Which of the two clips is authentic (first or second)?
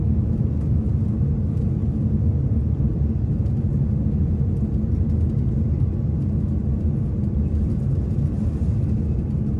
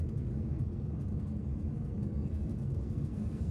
first